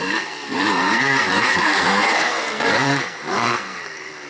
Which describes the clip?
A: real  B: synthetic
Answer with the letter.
B